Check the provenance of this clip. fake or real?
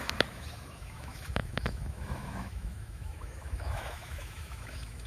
fake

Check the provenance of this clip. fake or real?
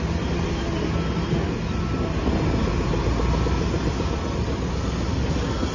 real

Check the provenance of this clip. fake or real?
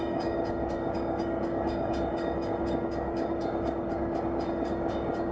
fake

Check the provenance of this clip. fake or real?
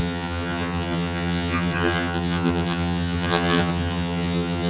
fake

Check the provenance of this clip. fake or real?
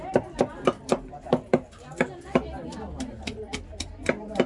real